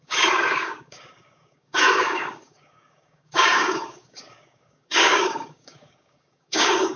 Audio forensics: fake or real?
fake